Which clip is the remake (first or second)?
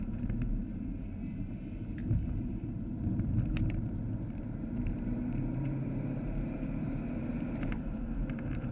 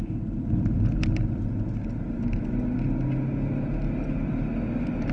first